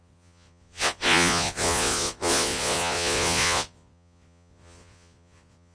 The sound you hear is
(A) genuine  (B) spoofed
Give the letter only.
B